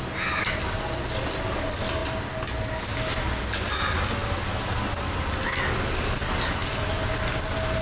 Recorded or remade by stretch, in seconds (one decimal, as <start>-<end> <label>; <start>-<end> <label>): 0.0-7.8 recorded